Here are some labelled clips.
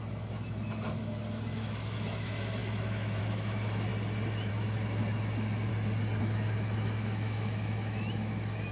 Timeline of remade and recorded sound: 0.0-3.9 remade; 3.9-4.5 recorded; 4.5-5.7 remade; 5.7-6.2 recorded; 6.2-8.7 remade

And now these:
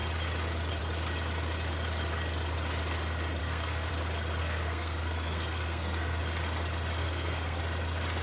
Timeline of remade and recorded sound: 0.0-3.4 recorded; 3.4-3.9 remade; 3.9-4.4 recorded; 4.4-6.2 remade; 6.2-7.0 recorded; 7.0-7.6 remade; 7.6-8.2 recorded